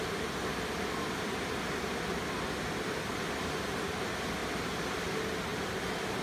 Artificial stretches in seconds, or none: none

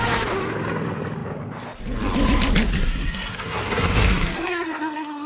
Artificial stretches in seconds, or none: 2.8-5.3 (codec, SNAC)

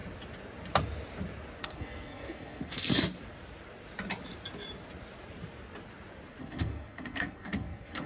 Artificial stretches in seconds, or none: 1.6-2.9 (codec, SNAC); 6.4-8.1

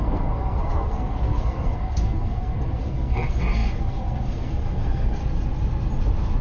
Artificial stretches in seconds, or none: 0.0-5.2 (codec, SNAC)

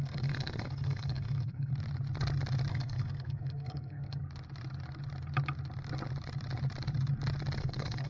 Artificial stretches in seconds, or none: 0.0-1.7 (codec, SNAC); 2.7-4.2; 7.6-8.1